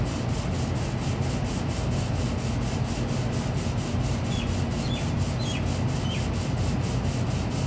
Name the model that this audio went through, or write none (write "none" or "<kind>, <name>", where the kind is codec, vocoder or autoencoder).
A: none